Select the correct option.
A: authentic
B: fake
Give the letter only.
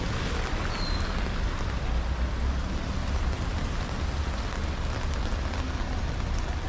A